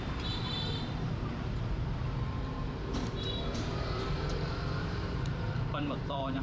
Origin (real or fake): fake